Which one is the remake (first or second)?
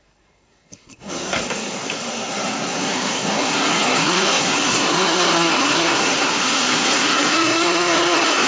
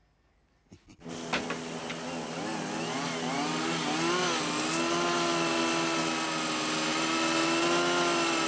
first